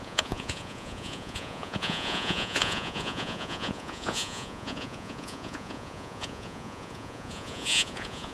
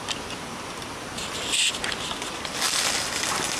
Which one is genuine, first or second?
second